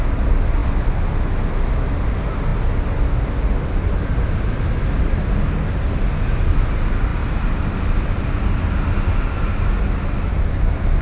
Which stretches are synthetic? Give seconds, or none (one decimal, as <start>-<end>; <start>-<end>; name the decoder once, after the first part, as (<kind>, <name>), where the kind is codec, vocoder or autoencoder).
none